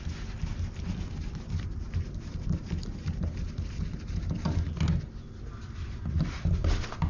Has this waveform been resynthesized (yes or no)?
no